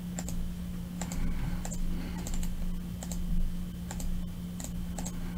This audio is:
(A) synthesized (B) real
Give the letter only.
B